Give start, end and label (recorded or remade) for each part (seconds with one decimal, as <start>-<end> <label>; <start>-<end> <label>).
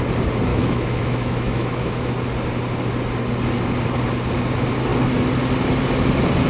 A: 0.0-0.5 recorded; 0.5-2.1 remade; 2.1-6.5 recorded